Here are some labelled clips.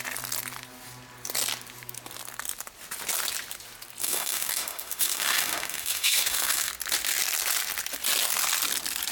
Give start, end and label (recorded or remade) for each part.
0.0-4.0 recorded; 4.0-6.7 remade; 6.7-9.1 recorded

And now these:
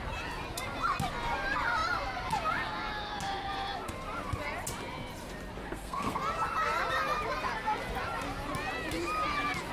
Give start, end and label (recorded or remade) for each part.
0.0-5.6 recorded; 5.6-6.2 remade; 6.2-9.7 recorded

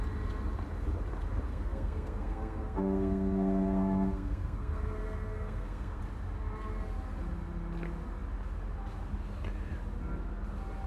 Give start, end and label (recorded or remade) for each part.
0.0-1.5 recorded; 1.5-6.0 remade; 6.0-10.9 recorded

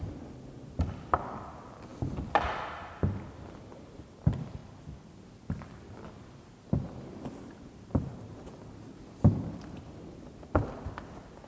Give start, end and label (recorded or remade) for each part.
0.0-11.5 recorded

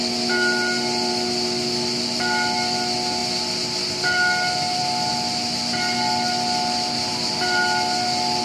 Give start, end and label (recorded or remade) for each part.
0.0-8.4 recorded